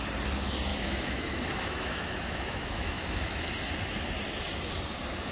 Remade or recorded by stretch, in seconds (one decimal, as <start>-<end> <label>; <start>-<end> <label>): 0.0-0.7 recorded; 0.7-3.4 remade; 3.4-5.3 recorded